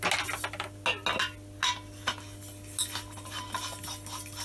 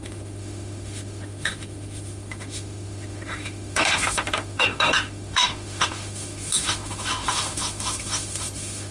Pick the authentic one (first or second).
first